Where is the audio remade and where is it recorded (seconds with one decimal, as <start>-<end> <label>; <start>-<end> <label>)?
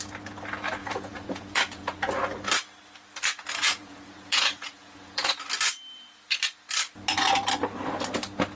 0.0-0.8 recorded; 0.8-2.1 remade; 2.1-3.6 recorded; 3.6-5.3 remade; 5.3-8.6 recorded